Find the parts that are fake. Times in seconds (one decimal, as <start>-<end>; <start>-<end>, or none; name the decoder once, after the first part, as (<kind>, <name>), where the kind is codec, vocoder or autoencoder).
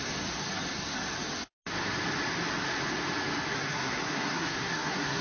3.5-5.2 (codec, SNAC)